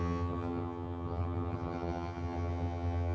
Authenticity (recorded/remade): remade